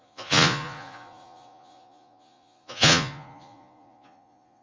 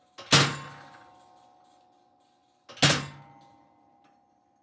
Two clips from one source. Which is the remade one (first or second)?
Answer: first